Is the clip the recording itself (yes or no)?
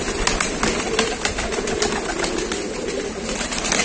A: yes